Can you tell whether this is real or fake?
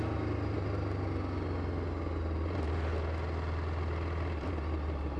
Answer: real